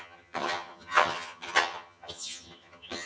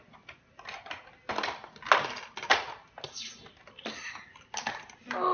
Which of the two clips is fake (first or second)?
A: first